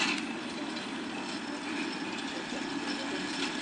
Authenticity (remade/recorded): recorded